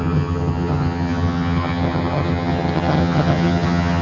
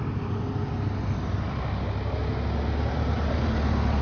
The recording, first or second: second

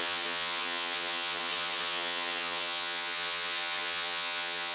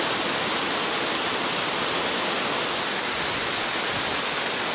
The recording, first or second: second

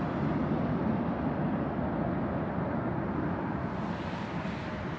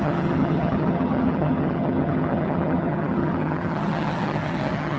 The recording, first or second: first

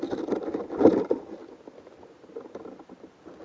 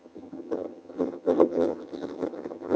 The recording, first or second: first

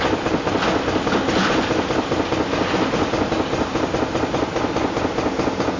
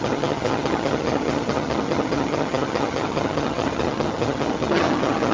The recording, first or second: first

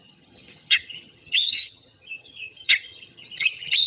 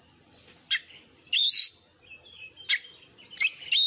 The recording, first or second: second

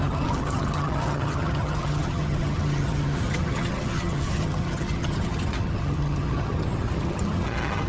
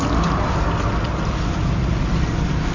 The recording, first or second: second